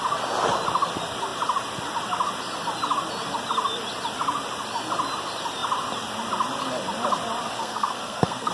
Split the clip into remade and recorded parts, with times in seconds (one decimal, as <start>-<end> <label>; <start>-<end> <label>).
0.0-7.6 recorded; 7.6-8.5 remade

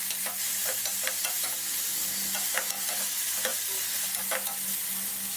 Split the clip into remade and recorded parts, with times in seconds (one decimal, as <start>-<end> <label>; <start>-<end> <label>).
0.0-5.4 recorded

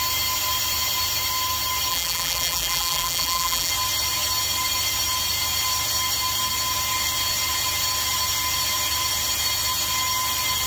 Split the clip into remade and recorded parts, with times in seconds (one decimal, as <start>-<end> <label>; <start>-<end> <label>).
0.0-1.9 recorded; 1.9-3.7 remade; 3.7-10.7 recorded

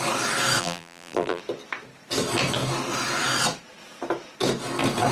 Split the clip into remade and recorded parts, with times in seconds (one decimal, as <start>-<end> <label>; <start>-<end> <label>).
0.0-0.6 recorded; 0.6-1.4 remade; 1.4-5.1 recorded

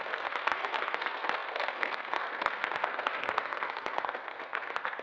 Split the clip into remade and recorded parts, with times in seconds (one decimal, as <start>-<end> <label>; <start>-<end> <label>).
0.0-5.0 remade

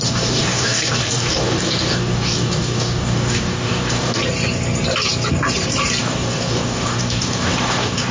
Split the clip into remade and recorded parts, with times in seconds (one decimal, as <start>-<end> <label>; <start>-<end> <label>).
0.0-4.2 remade; 4.2-6.0 recorded; 6.0-8.1 remade